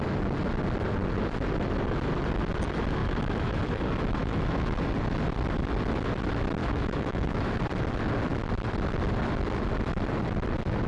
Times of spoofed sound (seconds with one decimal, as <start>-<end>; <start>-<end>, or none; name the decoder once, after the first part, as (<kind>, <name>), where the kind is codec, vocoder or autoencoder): 3.0-3.6 (autoencoder, DAC-VAE); 4.2-4.8; 6.6-7.6